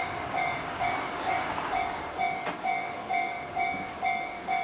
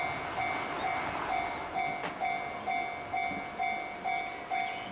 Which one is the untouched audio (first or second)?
second